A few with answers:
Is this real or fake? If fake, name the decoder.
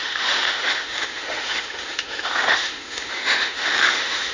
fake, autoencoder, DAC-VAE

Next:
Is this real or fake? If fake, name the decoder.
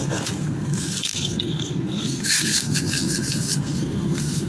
fake, codec, SNAC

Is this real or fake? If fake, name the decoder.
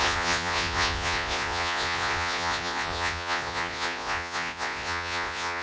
fake, vocoder, Vocos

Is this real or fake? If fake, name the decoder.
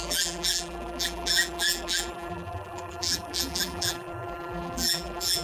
fake, vocoder, BigVGAN v2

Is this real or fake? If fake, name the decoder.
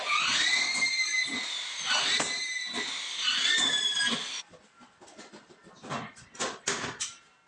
real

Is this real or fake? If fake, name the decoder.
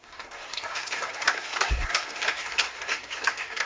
fake, codec, SNAC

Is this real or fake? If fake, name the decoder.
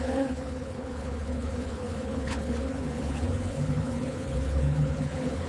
fake, codec, HILCodec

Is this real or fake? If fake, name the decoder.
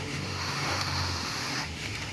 fake, autoencoder, DAC-VAE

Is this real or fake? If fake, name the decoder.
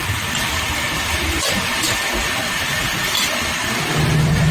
real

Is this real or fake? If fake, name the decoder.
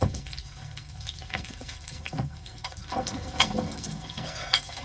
fake, codec, SNAC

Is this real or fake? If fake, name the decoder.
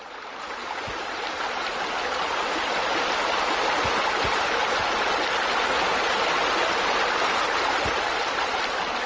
real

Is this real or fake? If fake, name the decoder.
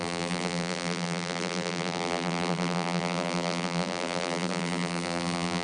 fake, vocoder, BigVGAN v2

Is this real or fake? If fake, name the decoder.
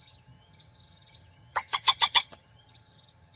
fake, vocoder, HiFi-GAN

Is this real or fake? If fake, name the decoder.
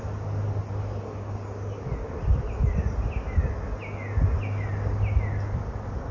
real